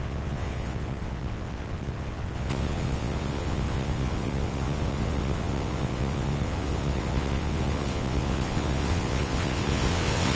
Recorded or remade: remade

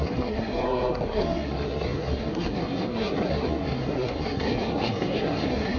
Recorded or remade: remade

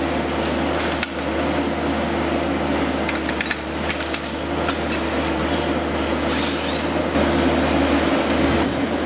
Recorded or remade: recorded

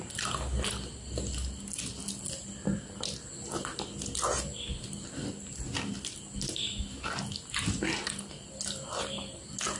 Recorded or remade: recorded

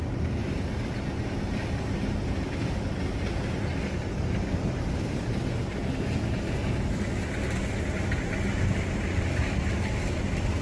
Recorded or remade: recorded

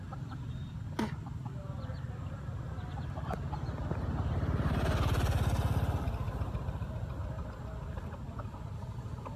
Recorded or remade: recorded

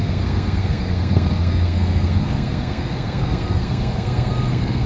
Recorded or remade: remade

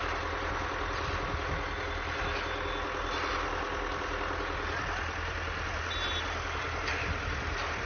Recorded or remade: recorded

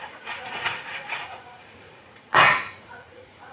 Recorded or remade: remade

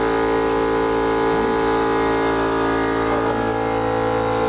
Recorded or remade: recorded